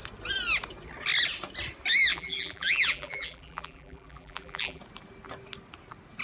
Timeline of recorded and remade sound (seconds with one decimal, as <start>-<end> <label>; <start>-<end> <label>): 0.0-2.1 recorded; 2.1-4.8 remade; 4.8-6.2 recorded